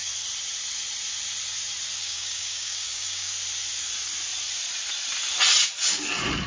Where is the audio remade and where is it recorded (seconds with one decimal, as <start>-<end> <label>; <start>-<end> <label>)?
0.0-2.0 recorded; 2.0-3.3 remade; 3.3-6.5 recorded